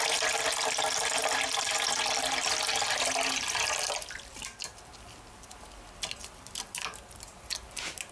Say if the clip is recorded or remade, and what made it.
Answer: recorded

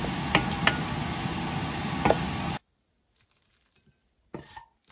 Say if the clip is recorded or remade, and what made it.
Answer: recorded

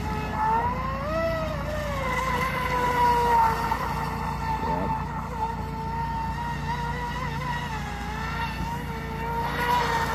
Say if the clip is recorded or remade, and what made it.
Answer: recorded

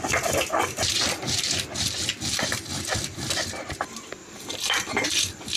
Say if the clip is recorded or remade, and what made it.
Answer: remade, vocoder, BigVGAN v2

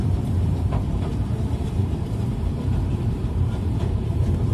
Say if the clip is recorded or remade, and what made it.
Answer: remade, vocoder, BigVGAN v2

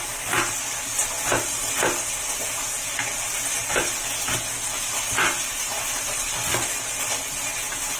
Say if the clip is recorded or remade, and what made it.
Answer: recorded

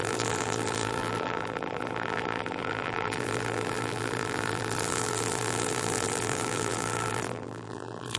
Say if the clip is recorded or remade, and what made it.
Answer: remade, vocoder, BigVGAN v2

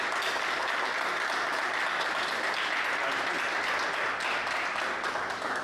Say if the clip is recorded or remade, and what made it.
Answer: recorded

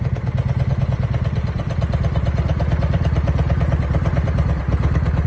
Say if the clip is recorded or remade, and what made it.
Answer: remade, vocoder, BigVGAN v2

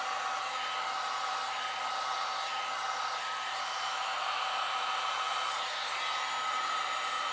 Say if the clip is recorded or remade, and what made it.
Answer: remade, vocoder, BigVGAN v2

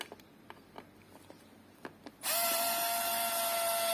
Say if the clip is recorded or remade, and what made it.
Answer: recorded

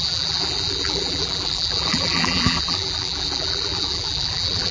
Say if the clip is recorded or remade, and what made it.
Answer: remade, vocoder, BigVGAN v2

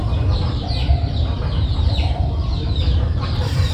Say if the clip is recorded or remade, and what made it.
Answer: remade, vocoder, BigVGAN v2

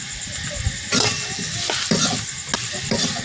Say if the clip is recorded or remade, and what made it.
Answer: recorded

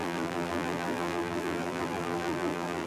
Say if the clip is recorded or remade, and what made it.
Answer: remade, vocoder, BigVGAN v2